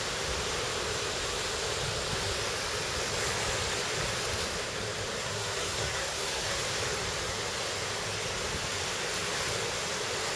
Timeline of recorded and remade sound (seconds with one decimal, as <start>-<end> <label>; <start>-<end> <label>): 0.0-5.2 recorded; 5.2-6.6 remade; 6.6-10.4 recorded